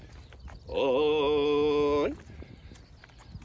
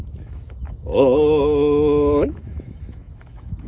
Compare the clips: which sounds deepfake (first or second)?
second